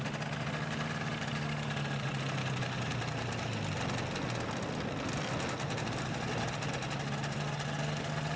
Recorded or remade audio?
recorded